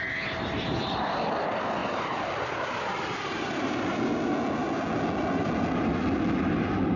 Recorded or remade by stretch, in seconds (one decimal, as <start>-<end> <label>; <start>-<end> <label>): 0.0-1.8 recorded; 1.8-2.3 remade; 2.3-7.0 recorded